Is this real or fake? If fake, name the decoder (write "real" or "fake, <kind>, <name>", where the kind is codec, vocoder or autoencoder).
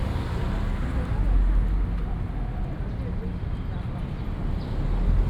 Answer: real